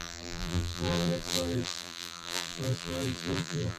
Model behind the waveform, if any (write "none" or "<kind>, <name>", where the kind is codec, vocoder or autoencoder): vocoder, BigVGAN v2